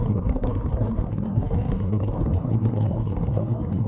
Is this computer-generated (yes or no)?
yes